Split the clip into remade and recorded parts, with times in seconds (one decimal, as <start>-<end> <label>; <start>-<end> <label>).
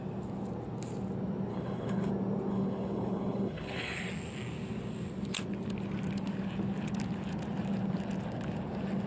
0.0-1.5 recorded; 1.5-2.1 remade; 2.1-2.5 recorded; 2.5-4.1 remade; 4.1-9.1 recorded